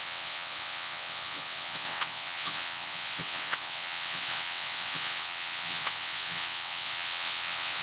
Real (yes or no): no